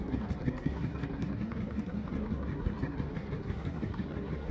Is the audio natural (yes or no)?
no